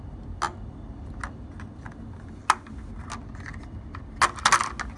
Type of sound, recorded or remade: recorded